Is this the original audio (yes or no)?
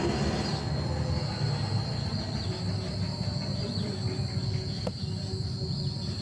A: yes